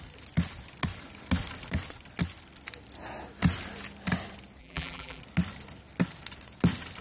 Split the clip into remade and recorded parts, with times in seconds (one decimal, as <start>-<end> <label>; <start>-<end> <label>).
0.0-4.6 recorded; 4.6-5.2 remade; 5.2-7.0 recorded